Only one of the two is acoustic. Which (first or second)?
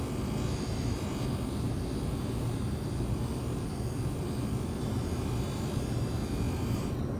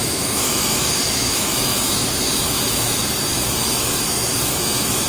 first